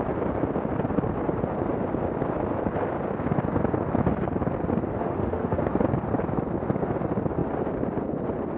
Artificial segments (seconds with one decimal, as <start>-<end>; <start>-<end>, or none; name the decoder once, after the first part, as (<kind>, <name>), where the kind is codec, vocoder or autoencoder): 4.9-5.6 (autoencoder, DAC-VAE)